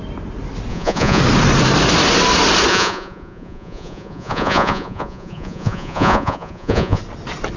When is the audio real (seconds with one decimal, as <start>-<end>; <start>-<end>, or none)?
0.0-0.7; 1.2-2.7; 7.0-7.6